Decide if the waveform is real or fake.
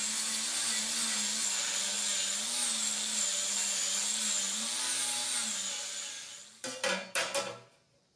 real